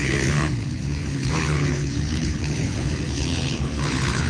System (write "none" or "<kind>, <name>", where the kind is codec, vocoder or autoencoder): codec, HILCodec